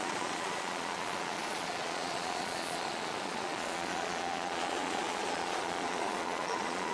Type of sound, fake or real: fake